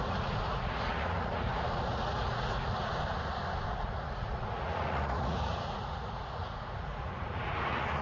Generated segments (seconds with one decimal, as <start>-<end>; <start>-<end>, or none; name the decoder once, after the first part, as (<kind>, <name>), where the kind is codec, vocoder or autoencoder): 0.0-2.9 (vocoder, Vocos); 3.7-8.0